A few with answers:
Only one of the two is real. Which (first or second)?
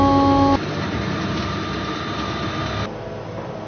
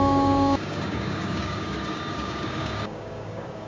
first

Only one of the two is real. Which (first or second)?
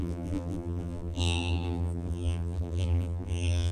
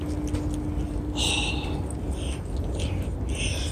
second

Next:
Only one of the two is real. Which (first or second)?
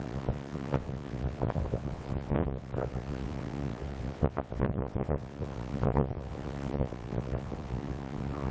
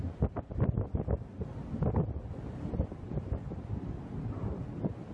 second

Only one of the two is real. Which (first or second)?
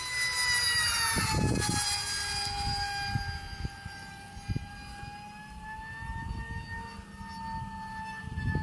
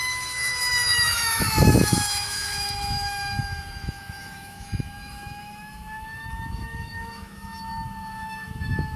first